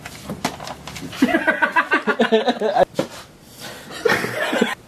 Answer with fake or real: real